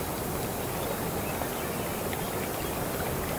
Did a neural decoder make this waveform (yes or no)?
no